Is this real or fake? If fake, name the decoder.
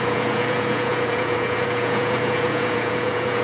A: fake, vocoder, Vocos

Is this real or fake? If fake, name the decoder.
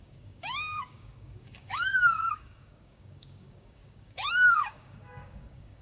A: fake, codec, DAC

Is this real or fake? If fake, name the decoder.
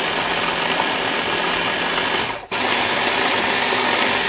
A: real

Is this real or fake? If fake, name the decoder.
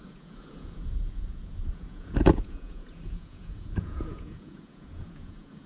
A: fake, vocoder, Vocos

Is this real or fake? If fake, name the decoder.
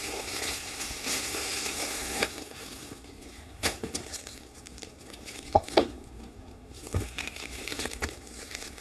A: fake, codec, SNAC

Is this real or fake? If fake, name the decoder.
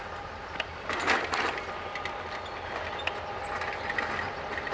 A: real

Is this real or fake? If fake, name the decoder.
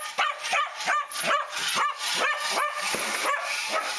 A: real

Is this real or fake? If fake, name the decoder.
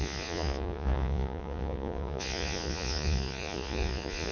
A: fake, vocoder, Vocos